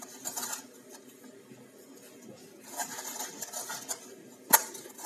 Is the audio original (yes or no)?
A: yes